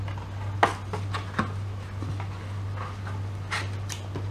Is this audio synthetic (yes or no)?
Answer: no